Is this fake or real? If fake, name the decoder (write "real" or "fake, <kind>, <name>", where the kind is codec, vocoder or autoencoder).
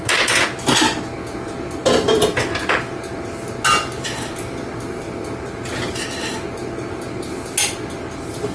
real